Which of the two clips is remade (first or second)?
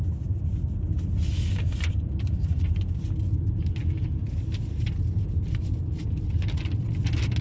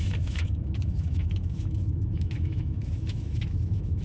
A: second